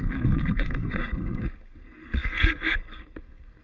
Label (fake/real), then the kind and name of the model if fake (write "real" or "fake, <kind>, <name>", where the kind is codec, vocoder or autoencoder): fake, codec, SNAC